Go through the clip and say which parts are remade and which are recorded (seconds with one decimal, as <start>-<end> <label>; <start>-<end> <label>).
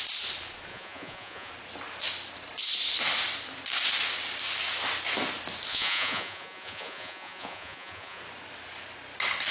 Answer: 0.0-0.7 recorded; 0.7-1.5 remade; 1.5-5.7 recorded; 5.7-8.2 remade; 8.2-9.5 recorded